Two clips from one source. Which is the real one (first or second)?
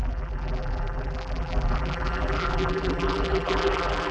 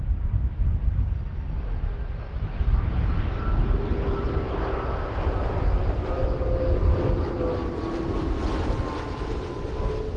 second